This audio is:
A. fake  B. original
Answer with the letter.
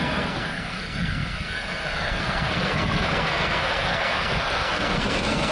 A